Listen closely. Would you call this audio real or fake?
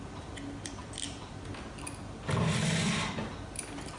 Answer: real